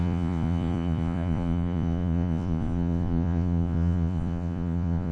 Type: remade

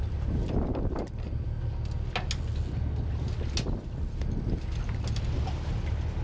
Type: recorded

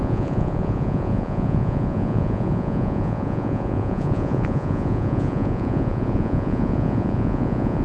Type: remade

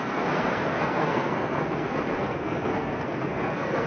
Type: remade